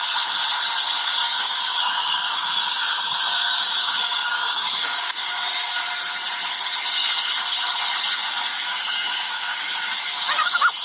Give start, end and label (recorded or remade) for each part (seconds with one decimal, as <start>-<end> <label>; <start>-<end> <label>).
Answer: 0.0-1.0 recorded; 1.0-5.8 remade; 5.8-8.5 recorded; 8.5-9.9 remade; 9.9-10.8 recorded